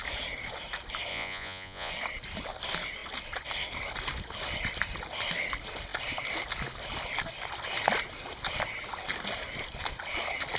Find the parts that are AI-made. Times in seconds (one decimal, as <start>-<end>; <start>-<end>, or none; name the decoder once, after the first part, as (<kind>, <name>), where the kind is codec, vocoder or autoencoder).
1.1-1.9 (vocoder, Vocos)